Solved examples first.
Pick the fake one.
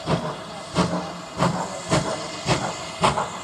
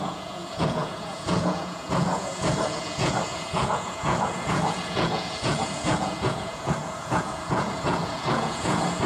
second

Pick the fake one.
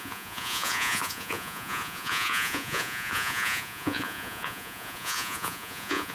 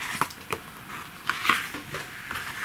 first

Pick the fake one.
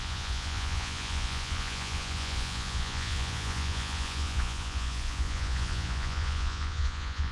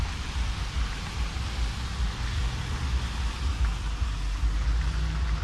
first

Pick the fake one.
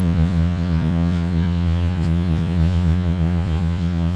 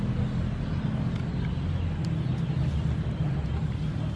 first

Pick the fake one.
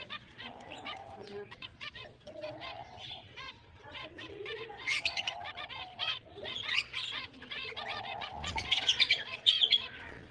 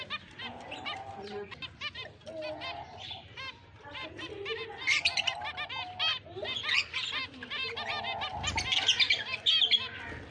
first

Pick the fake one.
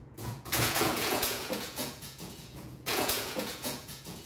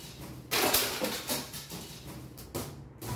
first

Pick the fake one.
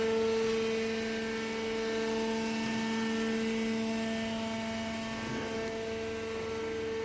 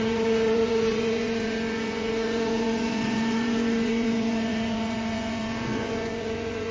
second